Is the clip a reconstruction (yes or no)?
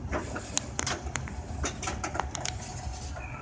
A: no